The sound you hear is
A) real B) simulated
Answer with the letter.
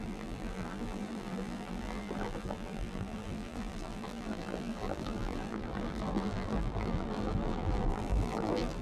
B